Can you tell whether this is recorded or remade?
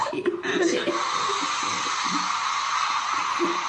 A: recorded